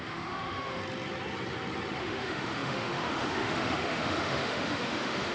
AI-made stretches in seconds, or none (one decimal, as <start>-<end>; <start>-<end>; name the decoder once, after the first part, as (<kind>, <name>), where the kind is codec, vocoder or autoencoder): 0.0-0.8 (autoencoder, DAC-VAE); 2.0-5.3